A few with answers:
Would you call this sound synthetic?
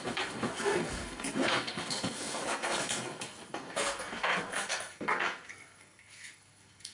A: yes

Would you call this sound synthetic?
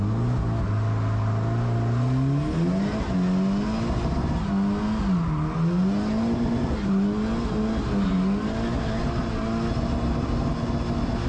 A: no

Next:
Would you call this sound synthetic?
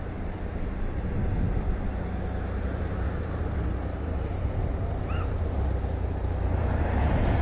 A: yes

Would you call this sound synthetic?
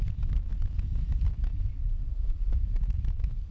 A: yes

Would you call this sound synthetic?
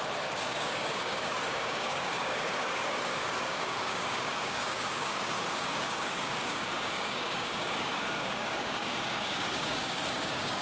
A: yes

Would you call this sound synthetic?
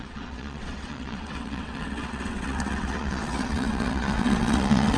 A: yes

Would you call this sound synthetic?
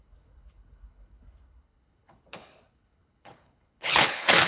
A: yes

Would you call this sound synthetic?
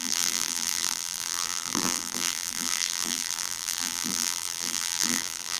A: yes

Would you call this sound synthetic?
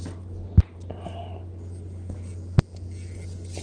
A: no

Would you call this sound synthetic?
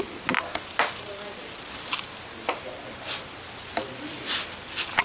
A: no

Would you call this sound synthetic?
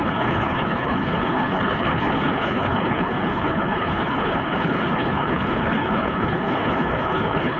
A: yes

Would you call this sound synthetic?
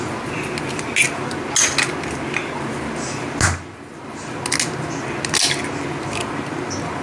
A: no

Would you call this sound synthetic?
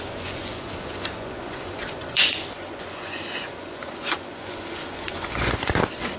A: yes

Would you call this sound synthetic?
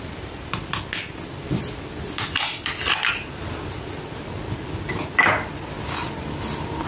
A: yes